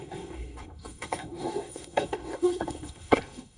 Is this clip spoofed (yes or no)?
yes